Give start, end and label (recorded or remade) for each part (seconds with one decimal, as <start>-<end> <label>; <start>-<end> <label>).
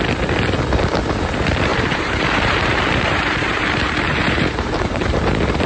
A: 0.0-1.7 recorded; 1.7-5.1 remade; 5.1-5.7 recorded